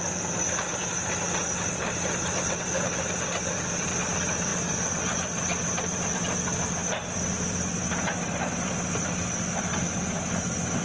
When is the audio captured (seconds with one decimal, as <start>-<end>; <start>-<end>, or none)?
0.0-10.8